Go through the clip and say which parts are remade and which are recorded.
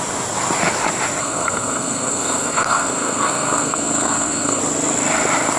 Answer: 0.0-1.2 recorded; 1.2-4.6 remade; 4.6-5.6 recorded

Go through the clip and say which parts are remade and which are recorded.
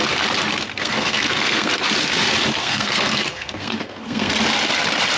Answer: 0.0-0.7 recorded; 0.7-1.7 remade; 1.7-2.6 recorded; 2.6-4.3 remade; 4.3-5.2 recorded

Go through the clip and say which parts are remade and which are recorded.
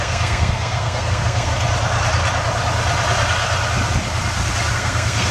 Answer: 0.0-1.5 remade; 1.5-4.7 recorded; 4.7-5.3 remade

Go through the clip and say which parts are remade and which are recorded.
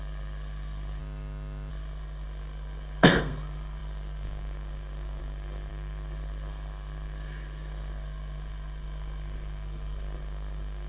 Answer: 0.0-1.0 remade; 1.0-1.7 recorded; 1.7-10.9 remade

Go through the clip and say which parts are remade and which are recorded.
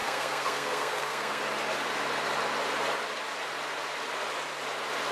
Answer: 0.0-1.4 remade; 1.4-5.1 recorded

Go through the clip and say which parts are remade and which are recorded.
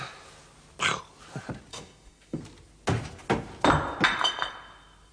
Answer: 0.0-1.7 recorded; 1.7-2.4 remade; 2.4-5.1 recorded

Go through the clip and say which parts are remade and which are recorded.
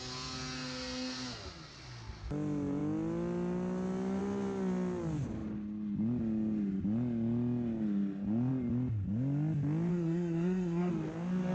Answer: 0.0-9.9 recorded; 9.9-10.9 remade; 10.9-11.5 recorded